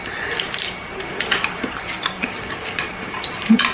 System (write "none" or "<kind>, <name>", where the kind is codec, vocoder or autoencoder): vocoder, BigVGAN v2